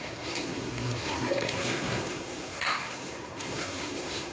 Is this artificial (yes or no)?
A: yes